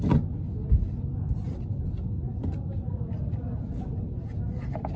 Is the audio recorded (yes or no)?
yes